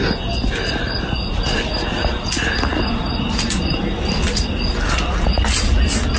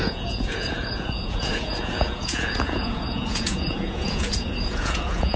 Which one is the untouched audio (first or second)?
first